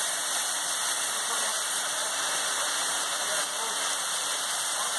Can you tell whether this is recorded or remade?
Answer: remade